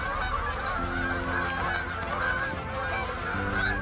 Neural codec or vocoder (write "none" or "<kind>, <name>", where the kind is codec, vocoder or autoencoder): none